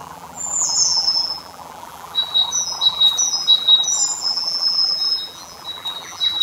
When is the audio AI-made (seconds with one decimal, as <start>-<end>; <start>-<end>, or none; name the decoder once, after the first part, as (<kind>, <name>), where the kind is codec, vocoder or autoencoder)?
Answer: 0.0-6.4 (vocoder, BigVGAN v2)

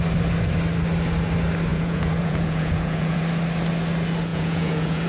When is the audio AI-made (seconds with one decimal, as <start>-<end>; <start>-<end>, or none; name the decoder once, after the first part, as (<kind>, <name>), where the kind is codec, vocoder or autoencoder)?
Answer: 1.7-3.2 (vocoder, Vocos); 4.3-5.1

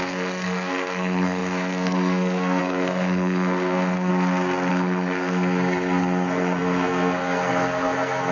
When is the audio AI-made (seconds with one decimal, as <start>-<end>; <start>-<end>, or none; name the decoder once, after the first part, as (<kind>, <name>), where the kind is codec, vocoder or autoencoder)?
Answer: 0.0-4.1 (codec, SNAC); 4.7-8.3